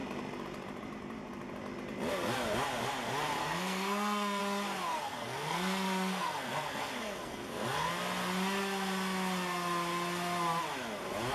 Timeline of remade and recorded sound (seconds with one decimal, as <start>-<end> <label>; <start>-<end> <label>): 0.0-3.4 recorded; 3.4-4.4 remade; 4.4-4.9 recorded; 4.9-7.9 remade; 7.9-11.3 recorded